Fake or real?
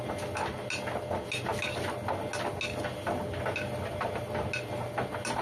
real